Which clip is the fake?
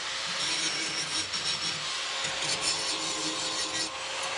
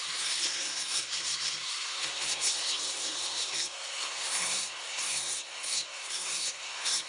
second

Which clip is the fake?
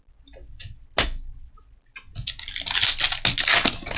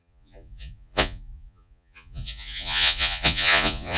second